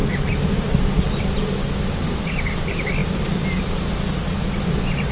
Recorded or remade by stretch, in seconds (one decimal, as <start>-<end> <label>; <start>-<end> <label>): 0.0-1.2 remade; 1.2-5.1 recorded